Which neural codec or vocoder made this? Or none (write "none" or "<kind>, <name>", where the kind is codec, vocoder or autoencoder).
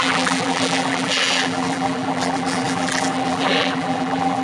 vocoder, BigVGAN v2